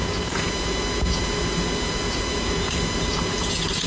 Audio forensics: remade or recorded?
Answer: remade